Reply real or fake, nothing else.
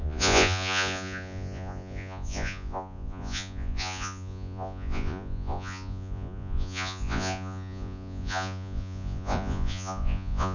fake